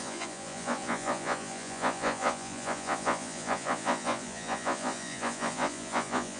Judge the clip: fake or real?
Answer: fake